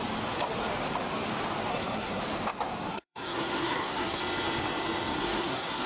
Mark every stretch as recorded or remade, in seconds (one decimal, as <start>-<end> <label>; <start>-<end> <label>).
0.0-1.7 recorded; 1.7-2.2 remade; 2.2-2.9 recorded; 2.9-4.2 remade; 4.2-5.1 recorded; 5.1-5.9 remade